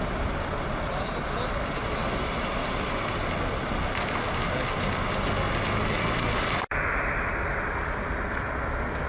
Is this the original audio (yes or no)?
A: yes